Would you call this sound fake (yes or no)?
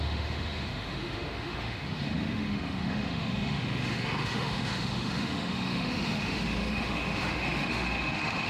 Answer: yes